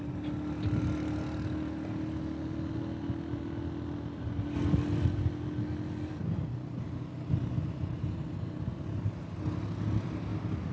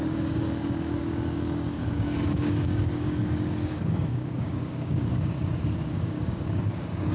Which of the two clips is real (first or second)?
first